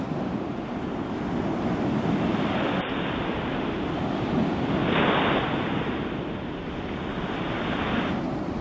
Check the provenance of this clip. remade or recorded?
recorded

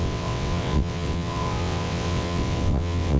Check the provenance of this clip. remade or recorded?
remade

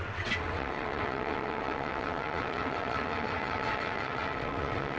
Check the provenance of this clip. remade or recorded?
remade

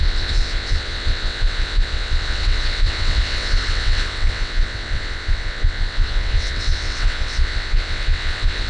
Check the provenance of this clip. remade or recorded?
remade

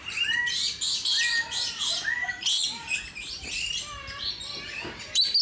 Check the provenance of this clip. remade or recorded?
recorded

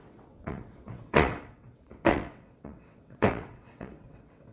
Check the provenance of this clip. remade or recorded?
remade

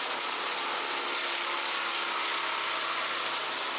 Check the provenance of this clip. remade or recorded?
recorded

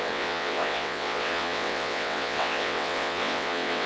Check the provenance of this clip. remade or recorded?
remade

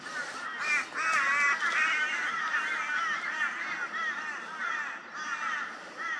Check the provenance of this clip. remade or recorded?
recorded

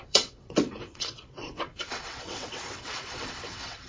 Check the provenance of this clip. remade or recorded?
remade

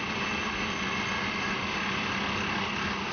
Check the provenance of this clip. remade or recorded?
recorded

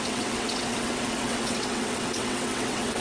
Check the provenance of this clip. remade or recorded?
remade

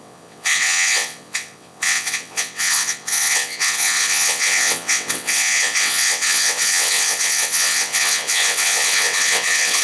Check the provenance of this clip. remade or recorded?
remade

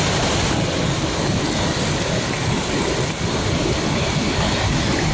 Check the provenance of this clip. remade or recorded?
recorded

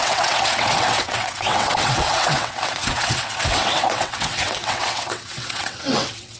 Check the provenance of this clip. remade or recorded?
remade